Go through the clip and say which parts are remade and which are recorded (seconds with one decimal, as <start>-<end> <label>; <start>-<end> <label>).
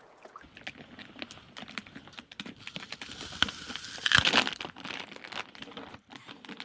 0.0-6.6 recorded